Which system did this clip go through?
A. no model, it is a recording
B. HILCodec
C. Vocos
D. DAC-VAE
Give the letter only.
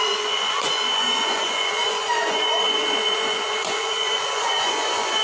C